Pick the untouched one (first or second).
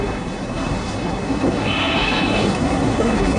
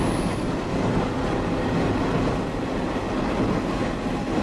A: second